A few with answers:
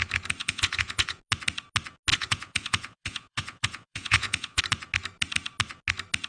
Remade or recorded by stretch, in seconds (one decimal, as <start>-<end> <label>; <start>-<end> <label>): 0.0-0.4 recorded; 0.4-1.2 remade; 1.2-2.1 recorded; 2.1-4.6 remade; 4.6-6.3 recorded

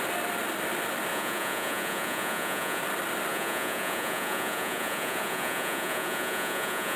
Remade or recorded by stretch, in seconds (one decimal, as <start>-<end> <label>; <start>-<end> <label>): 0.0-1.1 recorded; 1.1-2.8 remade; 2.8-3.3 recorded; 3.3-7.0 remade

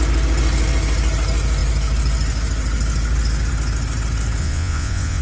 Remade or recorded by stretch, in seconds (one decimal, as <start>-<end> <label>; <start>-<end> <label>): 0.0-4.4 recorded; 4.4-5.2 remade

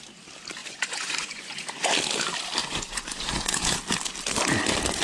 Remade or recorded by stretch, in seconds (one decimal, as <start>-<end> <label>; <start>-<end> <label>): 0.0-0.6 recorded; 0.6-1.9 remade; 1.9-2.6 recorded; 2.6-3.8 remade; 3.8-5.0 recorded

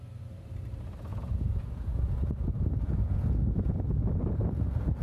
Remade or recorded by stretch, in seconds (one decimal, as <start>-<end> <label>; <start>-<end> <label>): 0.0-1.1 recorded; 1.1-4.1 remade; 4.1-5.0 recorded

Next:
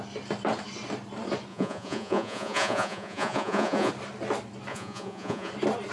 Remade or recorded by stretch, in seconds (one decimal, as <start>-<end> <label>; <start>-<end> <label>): 0.0-1.5 recorded; 1.5-3.9 remade; 3.9-4.7 recorded; 4.7-5.5 remade; 5.5-5.9 recorded

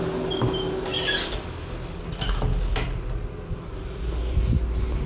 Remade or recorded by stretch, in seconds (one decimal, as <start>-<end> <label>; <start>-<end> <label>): 0.0-5.1 recorded

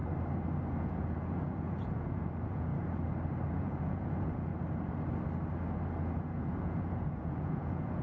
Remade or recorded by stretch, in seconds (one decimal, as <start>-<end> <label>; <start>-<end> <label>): 0.0-0.8 recorded; 0.8-2.7 remade; 2.7-3.5 recorded; 3.5-4.5 remade; 4.5-6.1 recorded; 6.1-8.0 remade